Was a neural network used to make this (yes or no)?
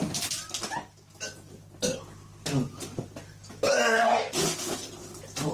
no